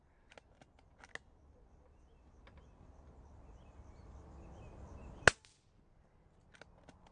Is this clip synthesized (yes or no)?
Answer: no